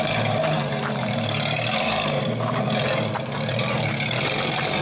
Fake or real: fake